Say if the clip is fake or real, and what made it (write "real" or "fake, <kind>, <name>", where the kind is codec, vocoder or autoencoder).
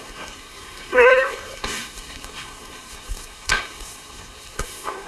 fake, codec, SNAC